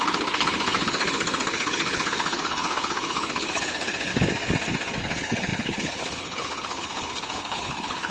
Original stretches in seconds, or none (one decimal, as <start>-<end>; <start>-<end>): 4.1-5.0